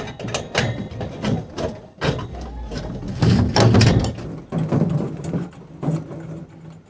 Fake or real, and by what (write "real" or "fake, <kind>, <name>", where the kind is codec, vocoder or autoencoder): real